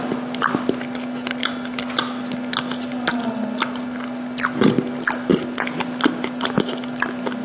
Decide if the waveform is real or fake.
real